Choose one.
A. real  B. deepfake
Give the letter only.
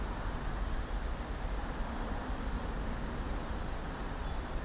A